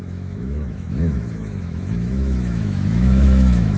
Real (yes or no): no